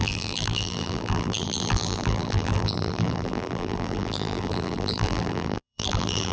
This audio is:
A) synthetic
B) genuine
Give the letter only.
A